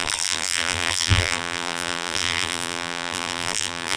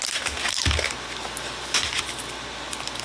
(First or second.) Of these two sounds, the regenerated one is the first